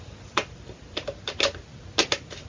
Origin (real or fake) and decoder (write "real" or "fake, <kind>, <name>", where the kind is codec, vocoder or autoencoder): real